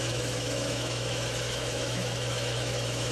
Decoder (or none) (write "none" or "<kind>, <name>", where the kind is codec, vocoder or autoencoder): autoencoder, DAC-VAE